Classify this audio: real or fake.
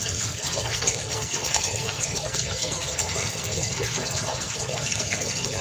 fake